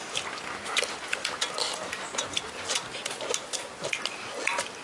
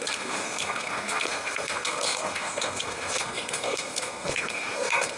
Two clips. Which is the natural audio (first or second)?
first